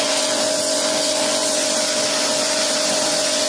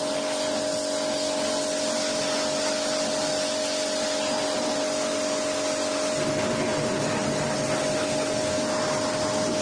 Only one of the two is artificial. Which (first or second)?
first